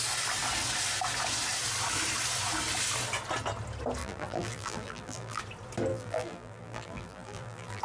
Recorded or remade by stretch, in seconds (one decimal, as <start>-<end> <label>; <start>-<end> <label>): 0.0-4.0 recorded; 4.0-5.4 remade; 5.4-5.9 recorded; 5.9-7.8 remade